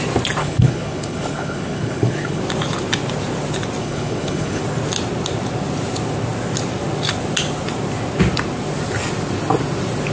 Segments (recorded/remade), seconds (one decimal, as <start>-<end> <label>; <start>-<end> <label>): 0.0-0.4 recorded; 0.4-2.4 remade; 2.4-3.8 recorded; 3.8-4.6 remade; 4.6-10.1 recorded